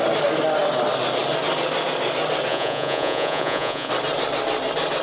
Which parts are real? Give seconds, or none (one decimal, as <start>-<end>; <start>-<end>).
0.0-2.5; 3.9-5.0